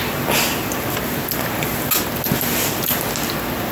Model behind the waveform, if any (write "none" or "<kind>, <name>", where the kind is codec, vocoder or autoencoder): none